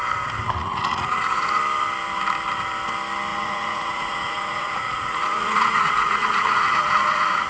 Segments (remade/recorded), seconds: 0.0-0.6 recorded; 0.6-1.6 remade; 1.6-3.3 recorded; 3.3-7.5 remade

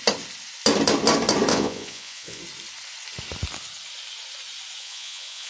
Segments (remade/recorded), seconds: 0.0-1.5 recorded; 1.5-2.4 remade; 2.4-4.8 recorded; 4.8-5.5 remade